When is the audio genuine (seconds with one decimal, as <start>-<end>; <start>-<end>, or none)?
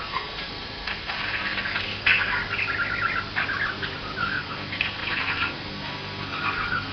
2.4-4.2